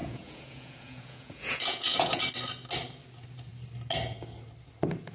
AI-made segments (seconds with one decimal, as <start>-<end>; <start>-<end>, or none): 0.0-2.2